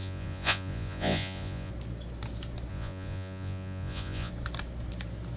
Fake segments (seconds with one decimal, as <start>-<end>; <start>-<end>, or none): 0.0-1.7; 2.7-4.3